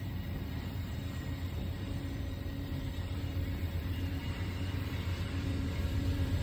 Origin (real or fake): fake